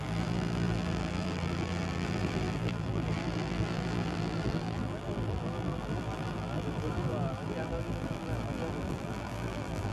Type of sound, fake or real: fake